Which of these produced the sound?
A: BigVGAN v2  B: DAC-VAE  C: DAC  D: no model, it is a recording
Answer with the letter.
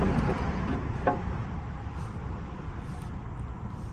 A